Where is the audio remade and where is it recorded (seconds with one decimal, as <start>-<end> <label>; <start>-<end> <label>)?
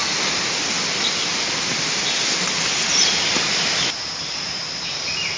0.0-5.4 recorded